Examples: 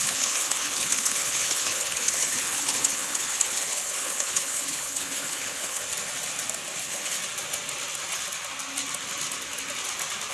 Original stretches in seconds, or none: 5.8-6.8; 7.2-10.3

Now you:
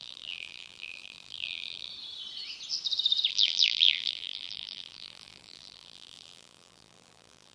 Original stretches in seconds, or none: 1.9-3.3

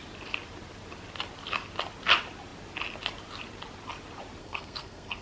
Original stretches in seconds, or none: 0.0-4.4